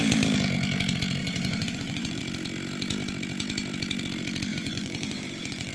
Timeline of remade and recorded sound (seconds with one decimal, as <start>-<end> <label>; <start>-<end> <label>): 0.0-1.2 recorded; 1.2-2.2 remade; 2.2-4.5 recorded; 4.5-5.7 remade